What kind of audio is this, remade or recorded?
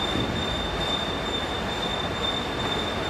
recorded